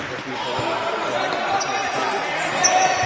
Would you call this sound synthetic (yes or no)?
no